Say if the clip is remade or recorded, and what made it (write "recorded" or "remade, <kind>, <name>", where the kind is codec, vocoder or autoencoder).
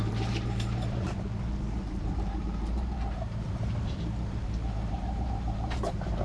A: remade, vocoder, BigVGAN v2